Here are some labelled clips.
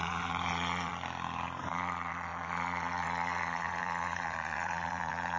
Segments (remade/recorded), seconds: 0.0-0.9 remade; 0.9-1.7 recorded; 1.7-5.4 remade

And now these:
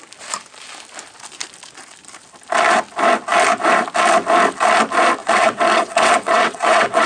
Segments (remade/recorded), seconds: 0.0-5.2 recorded; 5.2-7.1 remade

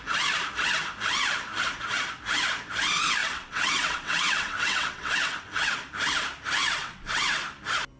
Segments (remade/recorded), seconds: 0.0-3.2 recorded; 3.2-5.7 remade; 5.7-6.6 recorded; 6.6-7.4 remade; 7.4-8.0 recorded

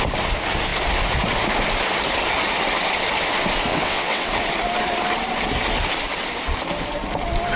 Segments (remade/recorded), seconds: 0.0-3.7 recorded; 3.7-4.3 remade; 4.3-7.6 recorded